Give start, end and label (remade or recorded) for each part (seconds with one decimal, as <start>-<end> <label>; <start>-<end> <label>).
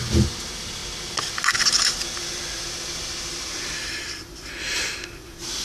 0.0-5.6 recorded